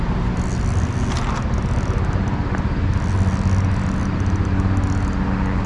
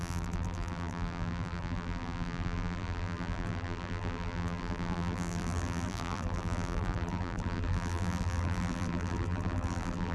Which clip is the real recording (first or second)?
first